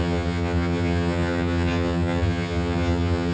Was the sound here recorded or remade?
remade